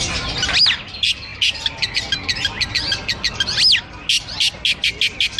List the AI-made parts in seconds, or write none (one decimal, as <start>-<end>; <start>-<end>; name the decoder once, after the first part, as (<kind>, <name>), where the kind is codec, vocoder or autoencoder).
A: none